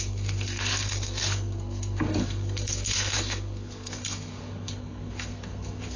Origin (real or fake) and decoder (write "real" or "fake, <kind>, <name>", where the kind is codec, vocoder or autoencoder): fake, codec, SNAC